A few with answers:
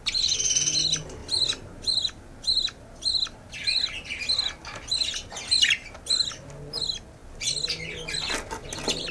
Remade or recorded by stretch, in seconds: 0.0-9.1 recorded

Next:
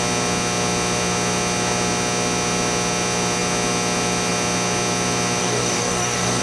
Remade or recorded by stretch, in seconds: 0.0-5.4 recorded; 5.4-6.4 remade

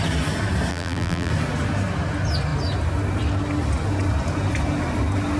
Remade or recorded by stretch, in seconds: 0.0-0.7 recorded; 0.7-1.3 remade; 1.3-5.4 recorded

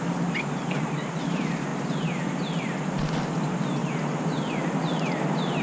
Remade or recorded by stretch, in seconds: 0.0-5.6 recorded

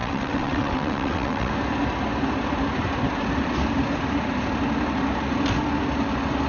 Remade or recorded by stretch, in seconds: 0.0-1.5 remade; 1.5-6.5 recorded

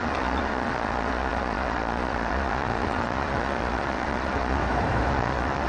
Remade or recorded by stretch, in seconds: 0.0-4.6 remade; 4.6-5.1 recorded; 5.1-5.7 remade